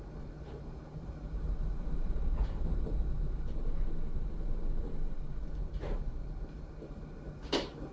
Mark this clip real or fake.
fake